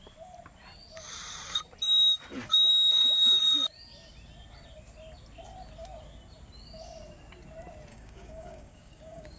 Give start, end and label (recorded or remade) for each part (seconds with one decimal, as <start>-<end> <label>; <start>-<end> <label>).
0.0-2.7 recorded; 2.7-3.4 remade; 3.4-7.9 recorded; 7.9-9.4 remade